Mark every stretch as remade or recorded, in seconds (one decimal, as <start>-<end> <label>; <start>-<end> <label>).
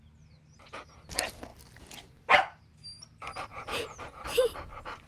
0.0-3.5 recorded; 3.5-4.2 remade; 4.2-5.1 recorded